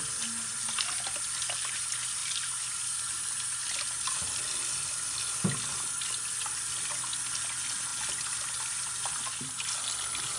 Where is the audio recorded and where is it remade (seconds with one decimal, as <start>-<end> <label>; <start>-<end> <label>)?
0.0-10.4 recorded